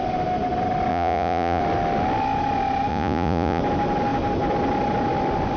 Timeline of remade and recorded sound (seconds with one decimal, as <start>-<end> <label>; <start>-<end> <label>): 0.0-0.9 recorded; 0.9-1.6 remade; 1.6-2.9 recorded; 2.9-3.6 remade; 3.6-5.6 recorded